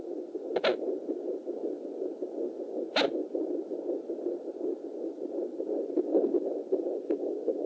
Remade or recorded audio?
recorded